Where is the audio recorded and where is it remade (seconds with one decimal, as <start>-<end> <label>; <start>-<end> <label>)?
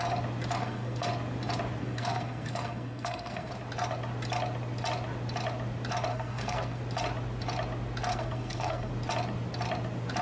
0.0-0.6 recorded; 0.6-1.1 remade; 1.1-1.8 recorded; 1.8-3.5 remade; 3.5-6.1 recorded; 6.1-6.8 remade; 6.8-8.1 recorded; 8.1-8.9 remade; 8.9-10.2 recorded